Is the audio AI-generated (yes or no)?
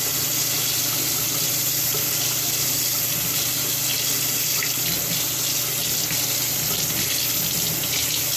no